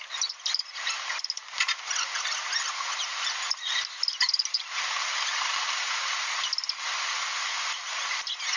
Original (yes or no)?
yes